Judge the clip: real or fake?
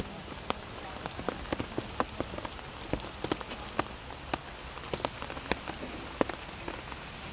real